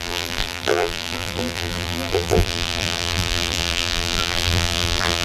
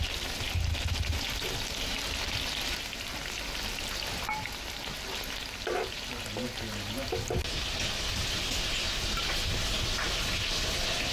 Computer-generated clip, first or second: first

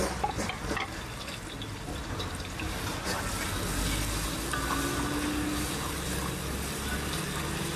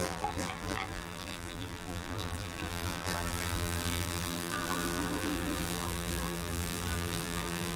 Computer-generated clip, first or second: second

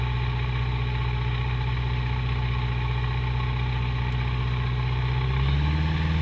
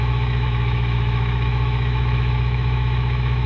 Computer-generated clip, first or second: second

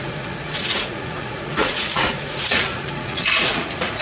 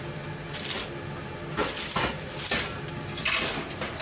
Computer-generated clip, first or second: first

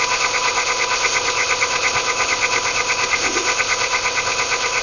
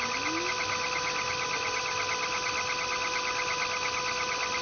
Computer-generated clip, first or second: first